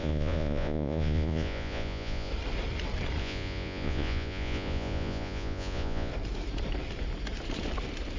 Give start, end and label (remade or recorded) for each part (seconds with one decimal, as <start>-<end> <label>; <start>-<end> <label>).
0.0-2.3 remade; 2.3-3.2 recorded; 3.2-6.1 remade; 6.1-8.2 recorded